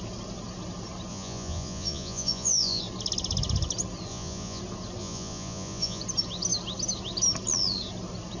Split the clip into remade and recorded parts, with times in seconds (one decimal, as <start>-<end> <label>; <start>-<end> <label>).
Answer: 0.0-1.1 recorded; 1.1-2.8 remade; 2.8-4.1 recorded; 4.1-4.6 remade; 4.6-5.0 recorded; 5.0-6.0 remade; 6.0-8.4 recorded